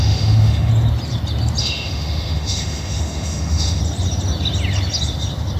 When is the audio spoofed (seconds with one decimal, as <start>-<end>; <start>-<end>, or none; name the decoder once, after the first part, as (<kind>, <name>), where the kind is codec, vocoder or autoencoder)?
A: 0.0-0.7 (autoencoder, DAC-VAE); 1.6-3.8